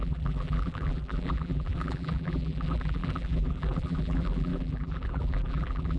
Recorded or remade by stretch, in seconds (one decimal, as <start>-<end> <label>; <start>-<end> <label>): 0.0-6.0 remade